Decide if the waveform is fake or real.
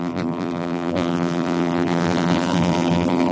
fake